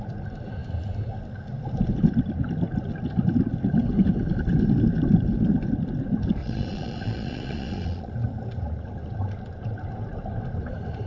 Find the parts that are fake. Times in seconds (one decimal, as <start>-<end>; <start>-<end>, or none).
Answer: 6.4-8.1